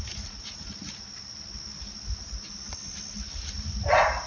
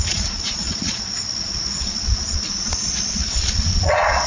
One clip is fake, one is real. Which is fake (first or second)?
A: second